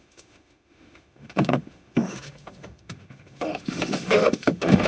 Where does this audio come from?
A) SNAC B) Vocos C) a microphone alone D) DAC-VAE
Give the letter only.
D